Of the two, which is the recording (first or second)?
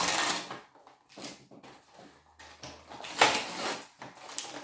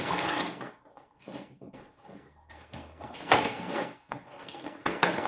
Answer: first